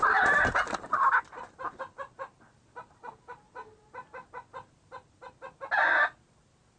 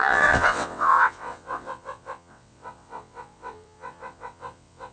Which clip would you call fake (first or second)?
second